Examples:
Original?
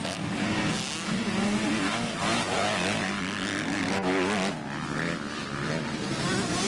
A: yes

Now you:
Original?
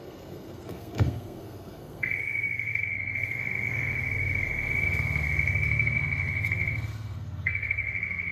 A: no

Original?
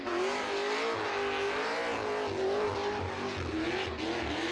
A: yes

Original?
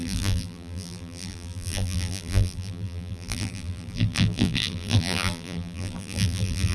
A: no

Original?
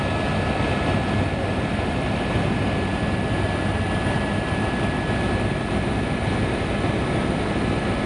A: yes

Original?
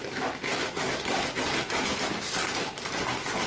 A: yes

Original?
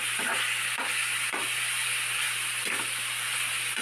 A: yes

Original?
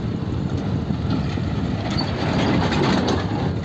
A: yes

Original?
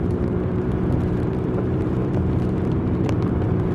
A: no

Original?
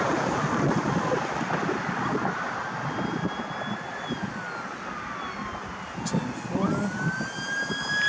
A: yes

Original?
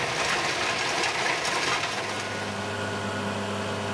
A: yes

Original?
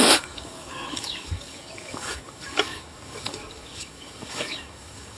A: no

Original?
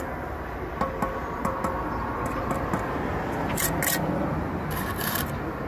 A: yes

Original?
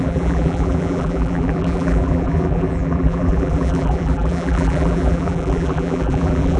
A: no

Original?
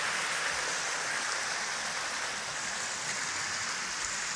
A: yes